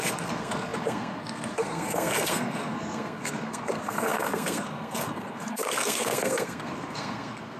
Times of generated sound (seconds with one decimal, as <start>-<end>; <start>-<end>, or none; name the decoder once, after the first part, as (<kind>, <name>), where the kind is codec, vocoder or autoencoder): 0.0-7.6 (codec, SNAC)